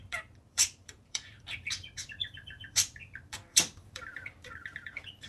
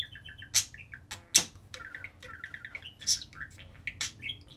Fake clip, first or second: first